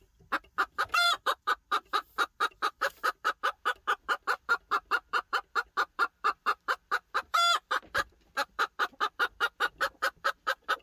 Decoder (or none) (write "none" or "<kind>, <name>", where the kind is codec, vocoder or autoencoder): vocoder, BigVGAN v2